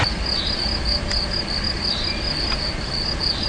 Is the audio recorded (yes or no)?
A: yes